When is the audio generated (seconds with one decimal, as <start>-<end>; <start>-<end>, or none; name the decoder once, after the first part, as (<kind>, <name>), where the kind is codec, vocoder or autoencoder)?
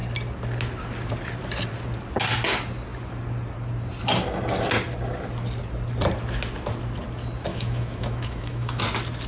7.5-8.8 (autoencoder, DAC-VAE)